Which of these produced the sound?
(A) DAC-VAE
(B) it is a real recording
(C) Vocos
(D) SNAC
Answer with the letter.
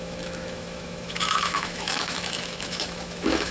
A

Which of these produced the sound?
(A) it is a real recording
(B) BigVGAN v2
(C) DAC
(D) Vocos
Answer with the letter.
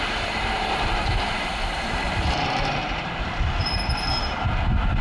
B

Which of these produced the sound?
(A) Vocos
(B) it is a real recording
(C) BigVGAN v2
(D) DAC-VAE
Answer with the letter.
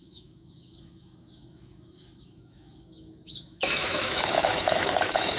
D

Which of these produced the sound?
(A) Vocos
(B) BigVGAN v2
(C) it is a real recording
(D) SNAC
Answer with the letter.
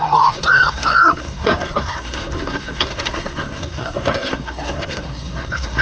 D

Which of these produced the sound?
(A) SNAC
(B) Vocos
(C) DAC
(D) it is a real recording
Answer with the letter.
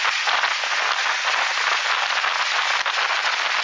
D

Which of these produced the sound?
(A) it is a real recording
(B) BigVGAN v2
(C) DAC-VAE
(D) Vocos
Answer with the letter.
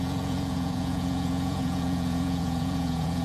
D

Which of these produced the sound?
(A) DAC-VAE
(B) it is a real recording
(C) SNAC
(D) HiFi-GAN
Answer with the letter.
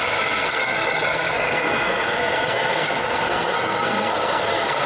C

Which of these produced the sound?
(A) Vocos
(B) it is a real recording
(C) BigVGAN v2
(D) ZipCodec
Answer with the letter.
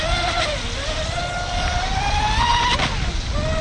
B